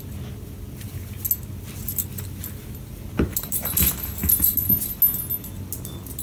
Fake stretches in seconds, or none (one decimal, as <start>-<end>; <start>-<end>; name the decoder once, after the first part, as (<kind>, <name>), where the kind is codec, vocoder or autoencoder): none